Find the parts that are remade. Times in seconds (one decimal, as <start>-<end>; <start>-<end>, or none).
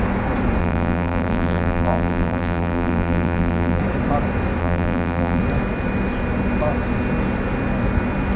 0.6-3.8; 4.6-5.4